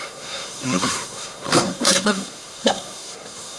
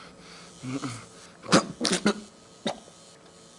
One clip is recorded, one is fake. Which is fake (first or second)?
first